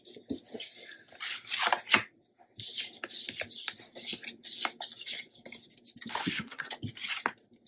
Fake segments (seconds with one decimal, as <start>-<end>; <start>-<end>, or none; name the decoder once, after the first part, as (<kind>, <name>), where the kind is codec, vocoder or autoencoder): 6.2-6.7 (codec, SNAC)